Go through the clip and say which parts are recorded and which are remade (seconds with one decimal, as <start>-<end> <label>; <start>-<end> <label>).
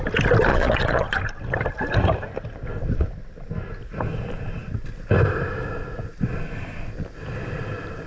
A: 0.0-0.5 recorded; 0.5-1.2 remade; 1.2-8.1 recorded